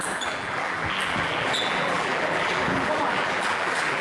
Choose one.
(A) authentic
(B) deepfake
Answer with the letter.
B